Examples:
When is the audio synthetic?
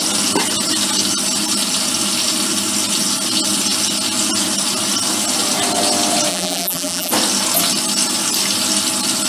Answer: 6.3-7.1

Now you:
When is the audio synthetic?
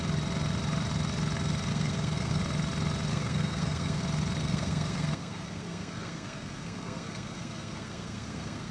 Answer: 1.7-2.4; 3.1-4.0; 4.4-8.7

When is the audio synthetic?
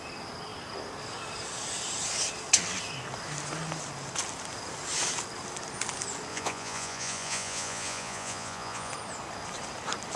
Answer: 6.3-8.9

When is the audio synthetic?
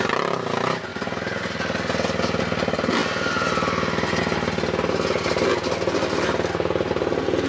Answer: none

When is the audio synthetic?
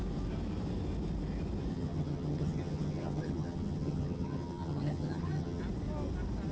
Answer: 1.7-5.6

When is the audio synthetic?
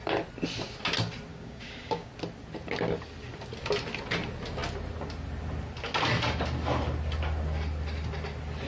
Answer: 1.3-2.1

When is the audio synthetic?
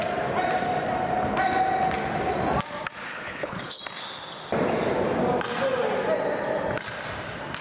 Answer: 3.0-3.8